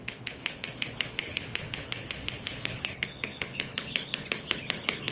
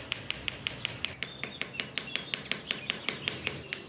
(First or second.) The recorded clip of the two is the second